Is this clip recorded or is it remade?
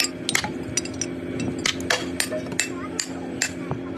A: recorded